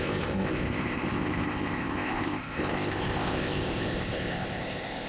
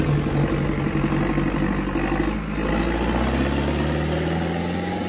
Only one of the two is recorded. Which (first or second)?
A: second